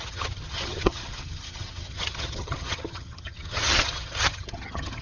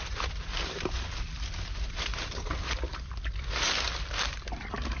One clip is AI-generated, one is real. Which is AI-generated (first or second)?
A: first